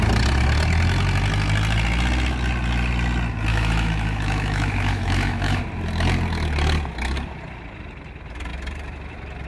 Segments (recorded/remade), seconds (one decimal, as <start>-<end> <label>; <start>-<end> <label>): 0.0-3.5 recorded; 3.5-5.6 remade; 5.6-9.5 recorded